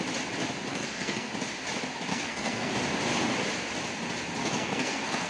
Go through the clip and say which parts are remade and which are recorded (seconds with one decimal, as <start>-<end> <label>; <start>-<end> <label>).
0.0-0.7 recorded; 0.7-1.3 remade; 1.3-2.1 recorded; 2.1-2.7 remade; 2.7-4.4 recorded; 4.4-5.3 remade